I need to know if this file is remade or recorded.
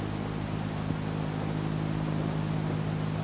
recorded